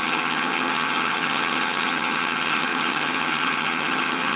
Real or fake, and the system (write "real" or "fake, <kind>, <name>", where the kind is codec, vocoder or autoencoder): fake, vocoder, HiFi-GAN